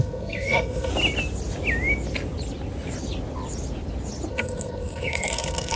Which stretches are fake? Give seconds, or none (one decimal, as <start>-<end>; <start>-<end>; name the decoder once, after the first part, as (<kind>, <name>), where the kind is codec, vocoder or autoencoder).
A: 0.0-0.9 (codec, SNAC); 4.3-5.8